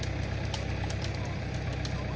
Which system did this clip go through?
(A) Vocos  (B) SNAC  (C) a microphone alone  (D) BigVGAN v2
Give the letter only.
C